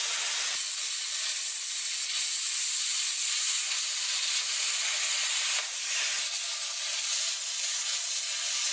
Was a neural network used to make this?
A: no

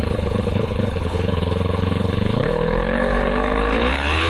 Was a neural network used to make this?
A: yes